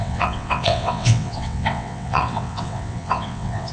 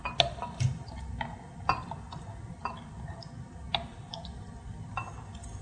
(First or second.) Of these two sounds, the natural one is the second